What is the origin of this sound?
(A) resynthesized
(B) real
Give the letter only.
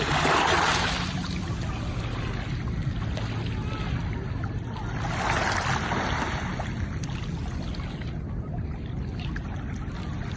B